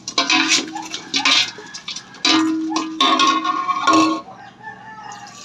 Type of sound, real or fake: real